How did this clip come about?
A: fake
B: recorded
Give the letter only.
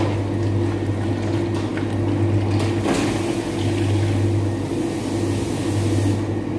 B